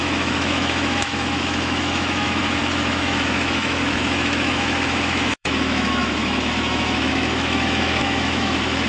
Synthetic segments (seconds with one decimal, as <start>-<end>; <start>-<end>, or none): 0.0-8.9